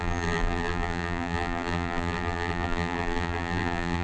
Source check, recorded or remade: remade